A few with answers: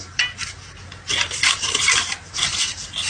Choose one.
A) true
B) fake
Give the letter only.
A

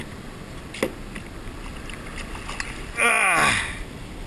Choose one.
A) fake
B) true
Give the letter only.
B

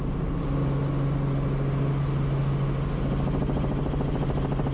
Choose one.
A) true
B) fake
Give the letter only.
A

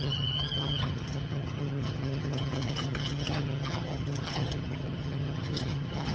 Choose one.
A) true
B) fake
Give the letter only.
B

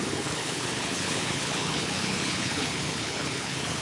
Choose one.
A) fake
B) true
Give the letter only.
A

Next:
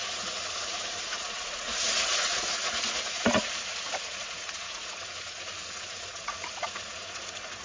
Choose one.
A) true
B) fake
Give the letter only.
B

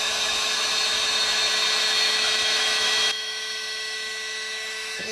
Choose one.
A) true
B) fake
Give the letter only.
B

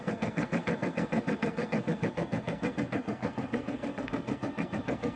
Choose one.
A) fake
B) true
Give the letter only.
A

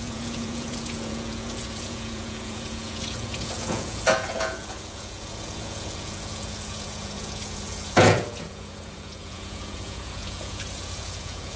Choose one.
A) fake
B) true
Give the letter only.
A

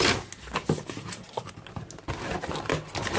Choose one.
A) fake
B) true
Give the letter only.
B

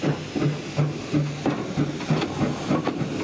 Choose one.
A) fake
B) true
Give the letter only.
B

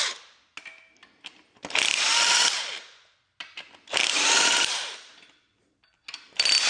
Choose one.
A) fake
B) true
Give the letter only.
B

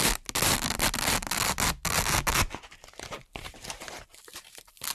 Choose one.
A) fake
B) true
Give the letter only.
B